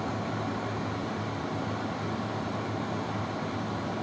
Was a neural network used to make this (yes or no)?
no